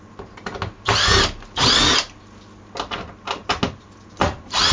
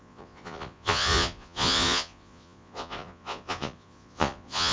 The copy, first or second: second